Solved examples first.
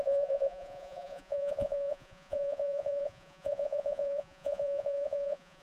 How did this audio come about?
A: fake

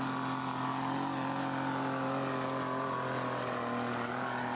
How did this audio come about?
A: real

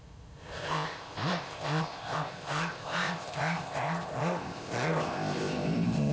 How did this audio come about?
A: fake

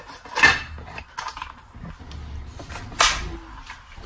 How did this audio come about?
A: real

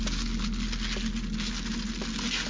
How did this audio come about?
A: real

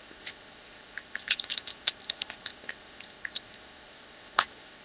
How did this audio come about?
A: fake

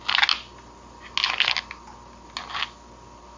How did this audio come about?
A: real